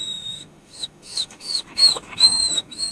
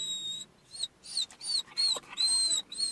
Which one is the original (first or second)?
second